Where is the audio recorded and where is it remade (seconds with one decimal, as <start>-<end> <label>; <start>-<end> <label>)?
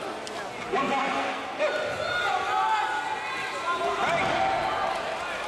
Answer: 0.0-0.7 recorded; 0.7-1.4 remade; 1.4-5.5 recorded